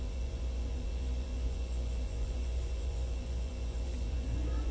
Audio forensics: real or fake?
fake